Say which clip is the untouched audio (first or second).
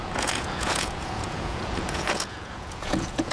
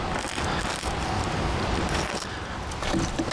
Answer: second